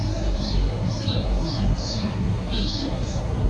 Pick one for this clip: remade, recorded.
remade